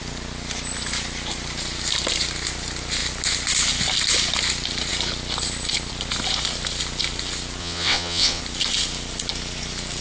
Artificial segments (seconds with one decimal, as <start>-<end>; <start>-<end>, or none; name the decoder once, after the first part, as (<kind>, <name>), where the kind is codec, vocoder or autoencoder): 7.6-8.4 (vocoder, WaveNeXt)